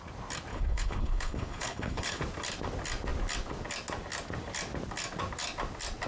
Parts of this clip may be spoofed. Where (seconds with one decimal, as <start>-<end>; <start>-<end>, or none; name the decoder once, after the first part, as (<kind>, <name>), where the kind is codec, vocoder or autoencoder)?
0.5-2.2 (codec, HILCodec)